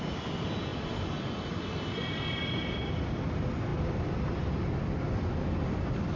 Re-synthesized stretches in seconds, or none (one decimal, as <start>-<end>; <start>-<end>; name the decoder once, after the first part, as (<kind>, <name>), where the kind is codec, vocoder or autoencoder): none